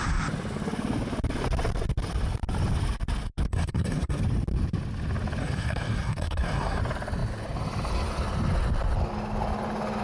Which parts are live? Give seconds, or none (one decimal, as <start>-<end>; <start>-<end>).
0.0-3.5; 4.2-5.4; 6.8-10.0